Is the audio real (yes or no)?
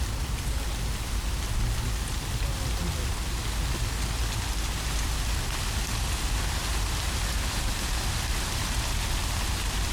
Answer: yes